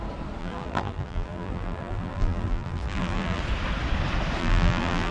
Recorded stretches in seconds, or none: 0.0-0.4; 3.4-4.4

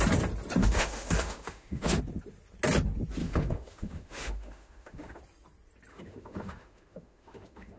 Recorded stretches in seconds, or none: 0.0-0.6; 2.0-3.2; 5.2-5.9